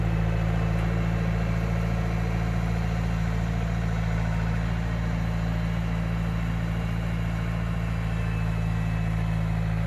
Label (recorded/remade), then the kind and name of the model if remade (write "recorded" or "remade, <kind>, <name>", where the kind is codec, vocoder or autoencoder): recorded